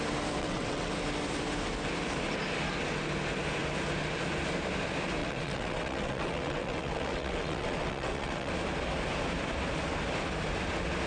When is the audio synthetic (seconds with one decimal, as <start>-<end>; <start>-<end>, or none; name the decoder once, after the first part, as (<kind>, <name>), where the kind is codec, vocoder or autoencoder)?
0.4-0.9 (vocoder, WaveNeXt); 5.2-8.5